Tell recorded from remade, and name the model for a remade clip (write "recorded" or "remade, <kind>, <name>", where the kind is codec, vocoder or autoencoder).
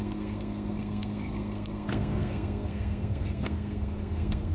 remade, codec, SNAC